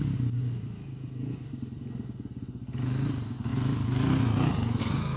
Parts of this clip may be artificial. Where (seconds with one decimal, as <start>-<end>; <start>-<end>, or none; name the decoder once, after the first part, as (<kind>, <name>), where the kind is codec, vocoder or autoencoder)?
none